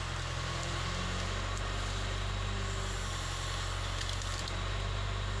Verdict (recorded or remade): recorded